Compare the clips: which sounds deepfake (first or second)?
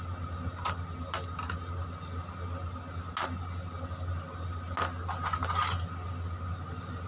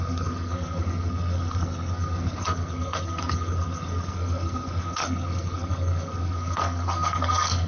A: second